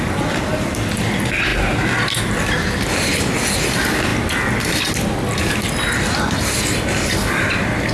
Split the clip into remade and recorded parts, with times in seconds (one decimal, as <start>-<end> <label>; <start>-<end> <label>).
0.0-7.9 recorded